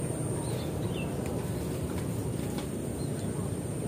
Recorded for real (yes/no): no